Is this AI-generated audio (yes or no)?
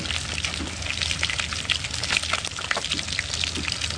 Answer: no